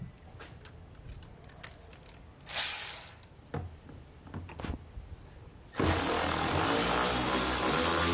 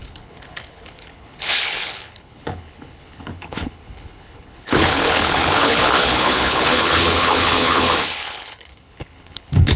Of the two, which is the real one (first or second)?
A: first